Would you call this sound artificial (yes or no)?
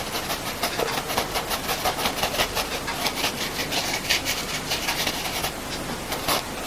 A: yes